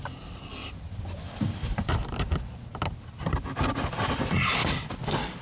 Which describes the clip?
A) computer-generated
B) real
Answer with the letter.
B